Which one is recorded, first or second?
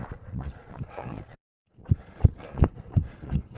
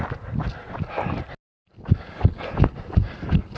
second